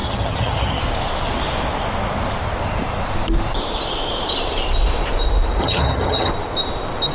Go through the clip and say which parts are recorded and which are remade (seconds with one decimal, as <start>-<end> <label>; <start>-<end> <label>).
0.0-0.8 remade; 0.8-5.6 recorded; 5.6-6.3 remade; 6.3-7.1 recorded